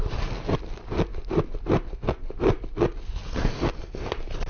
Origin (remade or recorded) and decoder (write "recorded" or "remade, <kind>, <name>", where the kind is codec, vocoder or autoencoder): recorded